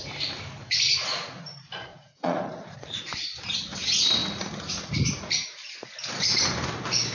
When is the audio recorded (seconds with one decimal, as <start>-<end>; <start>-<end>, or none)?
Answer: 0.0-1.9; 3.0-4.2; 5.7-7.1